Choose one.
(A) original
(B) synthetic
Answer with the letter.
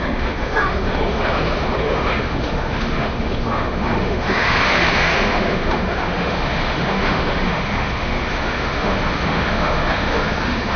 B